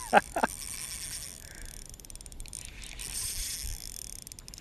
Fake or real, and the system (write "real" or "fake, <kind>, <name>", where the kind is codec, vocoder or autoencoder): real